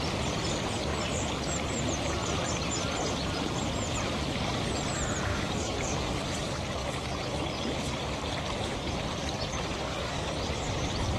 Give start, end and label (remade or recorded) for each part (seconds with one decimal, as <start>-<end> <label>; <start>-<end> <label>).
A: 0.0-5.3 recorded; 5.3-6.1 remade; 6.1-9.8 recorded; 9.8-10.3 remade; 10.3-11.2 recorded